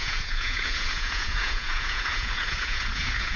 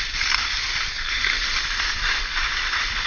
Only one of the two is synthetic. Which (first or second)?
first